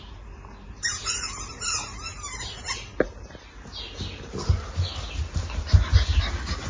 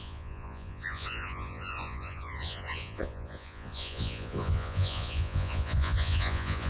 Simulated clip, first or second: second